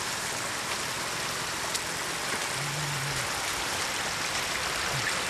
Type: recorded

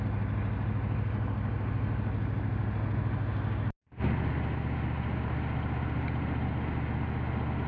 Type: recorded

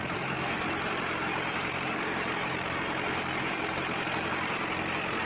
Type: remade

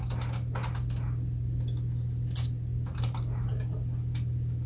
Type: recorded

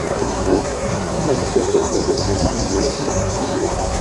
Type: remade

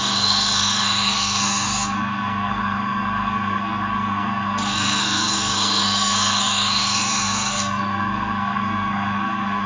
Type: remade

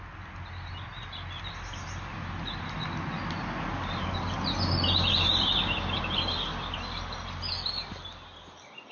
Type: recorded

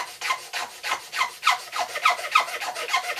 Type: recorded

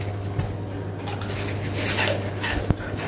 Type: recorded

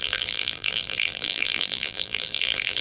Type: remade